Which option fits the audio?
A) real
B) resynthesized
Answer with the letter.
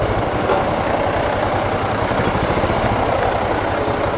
A